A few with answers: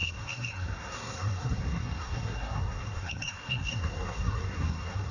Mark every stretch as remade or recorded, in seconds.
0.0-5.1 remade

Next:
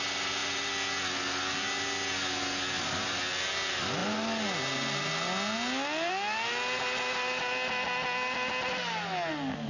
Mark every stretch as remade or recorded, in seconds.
0.0-9.7 recorded

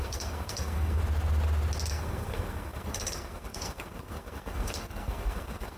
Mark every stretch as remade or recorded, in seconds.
0.0-1.0 remade; 1.0-1.9 recorded; 1.9-5.8 remade

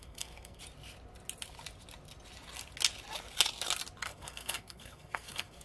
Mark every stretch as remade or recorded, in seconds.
0.0-0.6 remade; 0.6-4.0 recorded; 4.0-5.6 remade

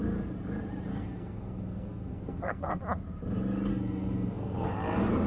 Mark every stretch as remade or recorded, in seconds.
0.0-0.9 recorded; 0.9-2.8 remade; 2.8-3.7 recorded; 3.7-4.7 remade; 4.7-5.3 recorded

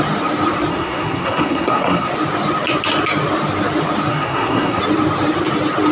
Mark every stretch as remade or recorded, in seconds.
0.0-0.7 recorded; 0.7-2.1 remade; 2.1-4.1 recorded; 4.1-4.8 remade; 4.8-5.9 recorded